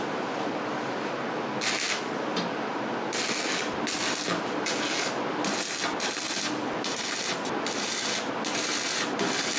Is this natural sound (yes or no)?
yes